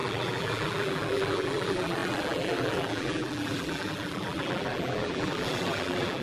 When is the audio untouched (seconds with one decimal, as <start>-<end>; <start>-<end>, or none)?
none